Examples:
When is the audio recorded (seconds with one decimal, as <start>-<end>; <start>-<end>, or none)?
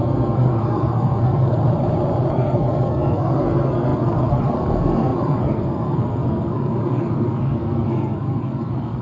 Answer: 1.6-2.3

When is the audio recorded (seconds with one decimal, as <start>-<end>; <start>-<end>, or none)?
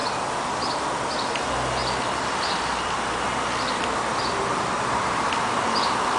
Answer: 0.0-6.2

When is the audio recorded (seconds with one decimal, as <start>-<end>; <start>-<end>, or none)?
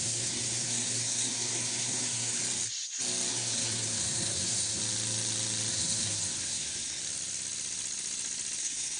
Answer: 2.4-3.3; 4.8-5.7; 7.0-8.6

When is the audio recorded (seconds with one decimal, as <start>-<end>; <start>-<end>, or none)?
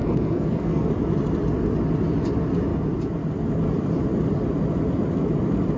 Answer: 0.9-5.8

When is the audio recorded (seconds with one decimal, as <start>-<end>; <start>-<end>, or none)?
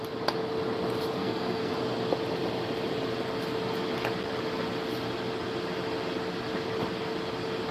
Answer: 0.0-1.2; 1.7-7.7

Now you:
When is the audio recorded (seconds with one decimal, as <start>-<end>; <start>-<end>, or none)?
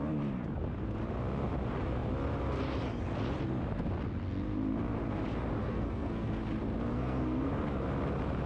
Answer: 0.0-5.6; 6.4-6.9; 7.5-8.5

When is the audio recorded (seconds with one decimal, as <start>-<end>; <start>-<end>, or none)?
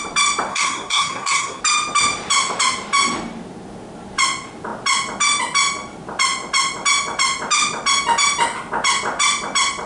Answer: 0.0-0.5; 1.6-9.9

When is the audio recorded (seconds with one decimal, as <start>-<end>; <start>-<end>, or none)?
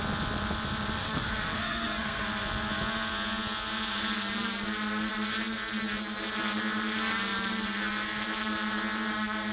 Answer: 0.0-1.0; 2.2-9.5